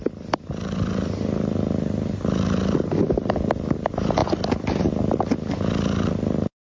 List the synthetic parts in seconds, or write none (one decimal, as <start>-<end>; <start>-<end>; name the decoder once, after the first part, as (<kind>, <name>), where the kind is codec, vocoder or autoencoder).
none